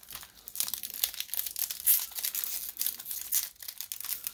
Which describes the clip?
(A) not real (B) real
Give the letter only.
B